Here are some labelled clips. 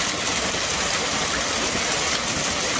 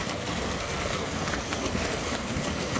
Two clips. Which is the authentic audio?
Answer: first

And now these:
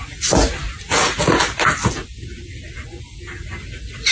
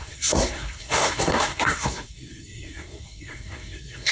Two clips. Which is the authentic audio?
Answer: first